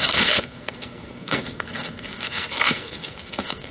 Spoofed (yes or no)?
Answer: yes